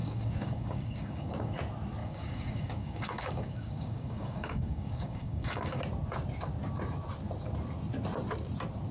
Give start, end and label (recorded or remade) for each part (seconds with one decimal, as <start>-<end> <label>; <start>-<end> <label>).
0.0-1.6 remade; 1.6-2.0 recorded; 2.0-5.8 remade; 5.8-8.9 recorded